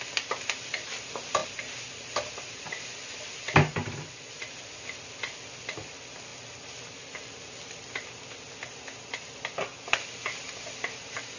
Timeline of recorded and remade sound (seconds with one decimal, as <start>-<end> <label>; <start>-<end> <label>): 0.0-1.4 recorded; 1.4-2.7 remade; 2.7-11.4 recorded